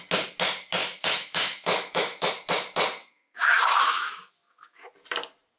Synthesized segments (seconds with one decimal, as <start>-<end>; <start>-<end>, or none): 0.8-2.3; 3.0-4.9